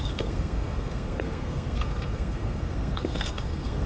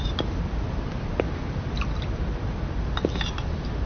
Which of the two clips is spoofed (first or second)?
first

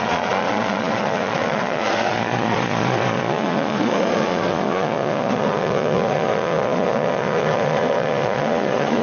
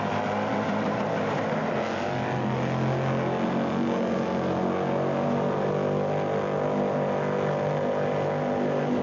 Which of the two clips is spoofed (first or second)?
first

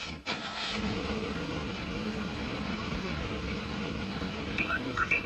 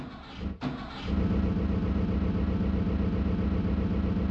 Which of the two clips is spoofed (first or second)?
first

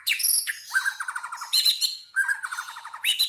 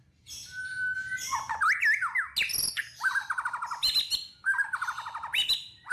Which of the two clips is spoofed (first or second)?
first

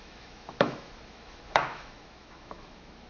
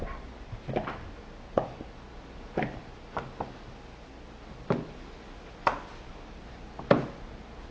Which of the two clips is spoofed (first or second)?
first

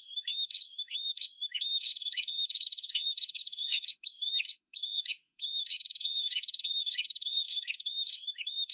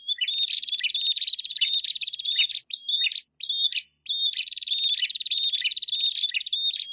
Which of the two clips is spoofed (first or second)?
first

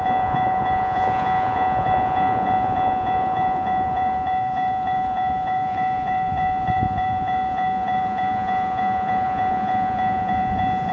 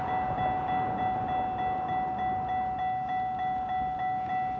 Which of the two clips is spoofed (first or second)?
first